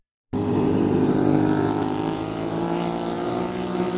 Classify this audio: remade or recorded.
remade